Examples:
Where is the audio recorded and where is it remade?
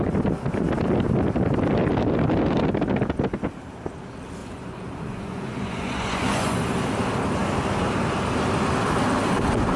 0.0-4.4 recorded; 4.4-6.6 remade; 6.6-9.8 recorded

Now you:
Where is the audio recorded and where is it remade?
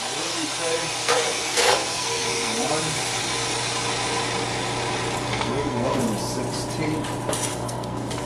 0.0-1.0 recorded; 1.0-2.7 remade; 2.7-5.3 recorded; 5.3-6.0 remade; 6.0-7.5 recorded; 7.5-8.3 remade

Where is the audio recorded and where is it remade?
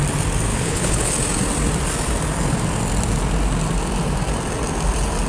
0.0-0.5 recorded; 0.5-1.1 remade; 1.1-5.3 recorded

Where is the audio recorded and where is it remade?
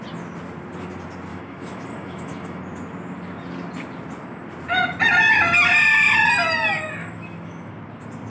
0.0-1.3 recorded; 1.3-2.6 remade; 2.6-7.0 recorded; 7.0-7.7 remade; 7.7-8.3 recorded